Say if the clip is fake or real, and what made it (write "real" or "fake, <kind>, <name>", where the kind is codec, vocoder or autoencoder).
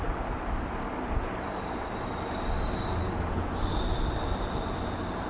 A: real